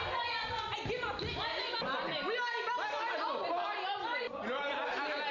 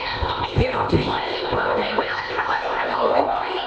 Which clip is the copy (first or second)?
second